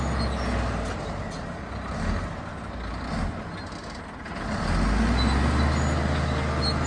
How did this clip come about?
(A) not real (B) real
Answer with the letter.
B